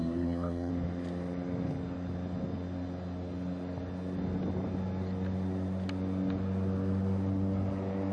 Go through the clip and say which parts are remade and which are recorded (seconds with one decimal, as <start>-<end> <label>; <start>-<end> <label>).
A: 0.0-0.7 remade; 0.7-8.1 recorded